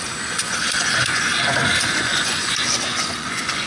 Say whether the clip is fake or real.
fake